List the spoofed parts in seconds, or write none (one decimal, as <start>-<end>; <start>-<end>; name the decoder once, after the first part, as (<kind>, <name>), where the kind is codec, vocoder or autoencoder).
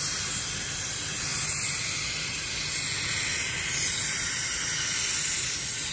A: none